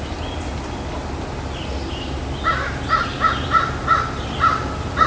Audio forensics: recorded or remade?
recorded